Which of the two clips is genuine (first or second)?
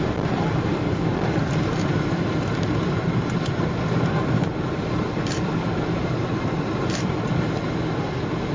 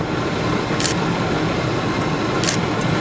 second